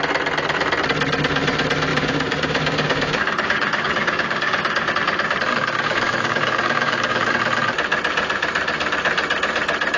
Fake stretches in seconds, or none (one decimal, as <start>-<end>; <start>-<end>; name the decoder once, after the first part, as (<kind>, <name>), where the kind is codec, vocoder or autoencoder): 1.9-4.9 (codec, DAC); 5.5-7.3